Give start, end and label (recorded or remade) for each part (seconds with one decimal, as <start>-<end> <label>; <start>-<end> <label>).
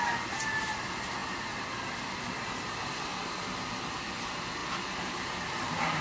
0.0-3.1 recorded; 3.1-3.7 remade; 3.7-4.6 recorded; 4.6-6.0 remade